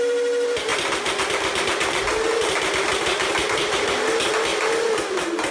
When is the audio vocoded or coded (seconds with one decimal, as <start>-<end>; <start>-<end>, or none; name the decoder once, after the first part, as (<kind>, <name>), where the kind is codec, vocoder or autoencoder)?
none